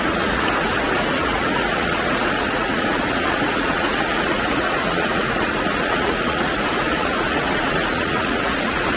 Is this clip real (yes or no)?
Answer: no